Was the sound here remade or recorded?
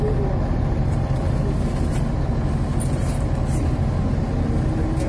recorded